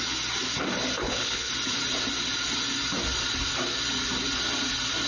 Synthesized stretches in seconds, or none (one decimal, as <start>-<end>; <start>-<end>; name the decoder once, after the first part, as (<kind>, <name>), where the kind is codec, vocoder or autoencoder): 1.0-1.5 (codec, HILCodec)